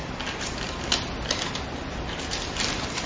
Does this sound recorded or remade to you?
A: recorded